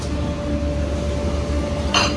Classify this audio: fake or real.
real